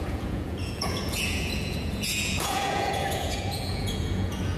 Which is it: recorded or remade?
remade